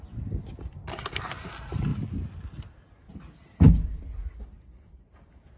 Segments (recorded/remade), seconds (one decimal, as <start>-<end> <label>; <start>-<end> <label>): 0.0-0.7 recorded; 0.7-1.4 remade; 1.4-1.9 recorded; 1.9-3.7 remade; 3.7-5.6 recorded